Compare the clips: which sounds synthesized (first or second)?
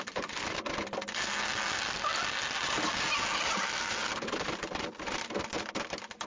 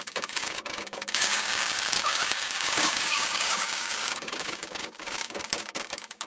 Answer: second